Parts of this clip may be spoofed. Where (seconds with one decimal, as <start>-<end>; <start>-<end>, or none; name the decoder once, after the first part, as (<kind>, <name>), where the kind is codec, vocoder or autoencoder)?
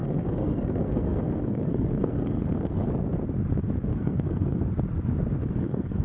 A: 0.0-2.9 (codec, SNAC); 3.9-4.6; 5.4-6.0